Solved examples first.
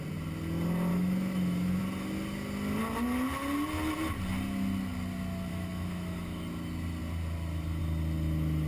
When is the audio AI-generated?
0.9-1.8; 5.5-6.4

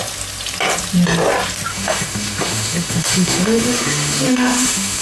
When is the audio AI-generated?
1.7-5.0

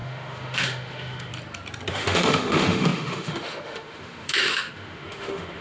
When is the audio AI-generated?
0.0-1.3; 1.9-5.6

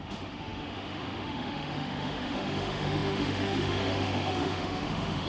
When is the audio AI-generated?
0.0-5.3

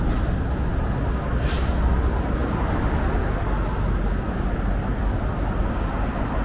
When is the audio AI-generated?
none